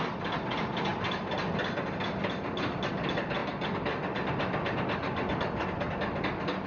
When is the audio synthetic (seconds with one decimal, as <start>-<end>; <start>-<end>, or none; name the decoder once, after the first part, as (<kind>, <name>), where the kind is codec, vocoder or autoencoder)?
none